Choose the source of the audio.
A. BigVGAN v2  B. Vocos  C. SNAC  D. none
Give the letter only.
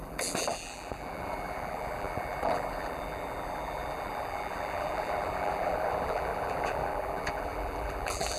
A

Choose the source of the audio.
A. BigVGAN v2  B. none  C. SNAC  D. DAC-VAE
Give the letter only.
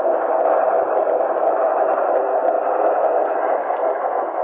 B